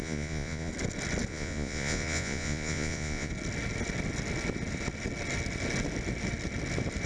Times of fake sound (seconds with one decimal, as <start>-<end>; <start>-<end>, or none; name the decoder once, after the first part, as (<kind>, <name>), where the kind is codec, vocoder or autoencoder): 0.0-0.7 (vocoder, Vocos); 1.3-3.3